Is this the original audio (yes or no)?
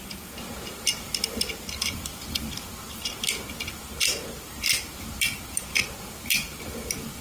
yes